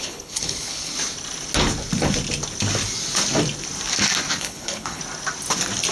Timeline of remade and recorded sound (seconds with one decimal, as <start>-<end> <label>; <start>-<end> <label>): 0.0-0.9 remade; 0.9-4.4 recorded; 4.4-5.0 remade; 5.0-5.9 recorded